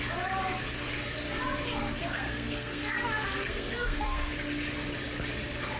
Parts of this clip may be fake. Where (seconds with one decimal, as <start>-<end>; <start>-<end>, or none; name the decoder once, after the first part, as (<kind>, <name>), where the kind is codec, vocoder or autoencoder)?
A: 1.8-4.3 (codec, SNAC)